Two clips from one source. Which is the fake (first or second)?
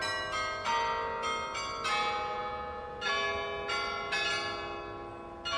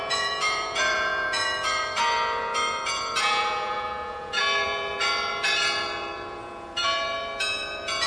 second